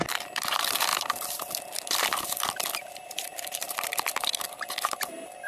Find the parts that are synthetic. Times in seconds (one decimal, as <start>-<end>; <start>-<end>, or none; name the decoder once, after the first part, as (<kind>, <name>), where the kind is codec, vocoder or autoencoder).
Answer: 0.0-5.5 (vocoder, BigVGAN v2)